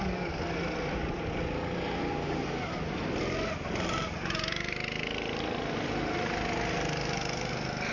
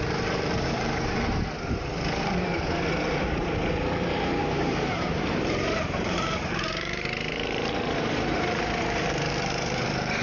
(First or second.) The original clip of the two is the first